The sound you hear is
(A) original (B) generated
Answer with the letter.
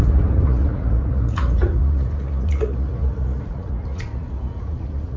B